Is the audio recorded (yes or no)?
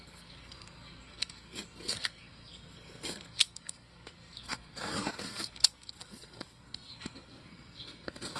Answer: no